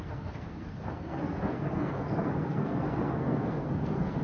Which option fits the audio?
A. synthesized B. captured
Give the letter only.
A